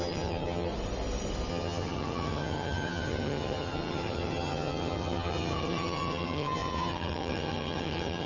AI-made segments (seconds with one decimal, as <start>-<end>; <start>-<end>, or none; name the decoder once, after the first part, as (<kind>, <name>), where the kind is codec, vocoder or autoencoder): 0.0-0.7 (vocoder, HiFi-GAN); 1.5-8.3